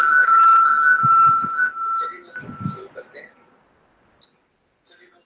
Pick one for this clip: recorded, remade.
recorded